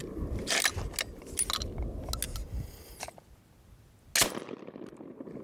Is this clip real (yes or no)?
yes